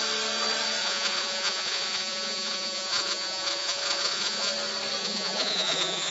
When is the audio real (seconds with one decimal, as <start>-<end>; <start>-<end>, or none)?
0.0-0.8; 4.5-5.0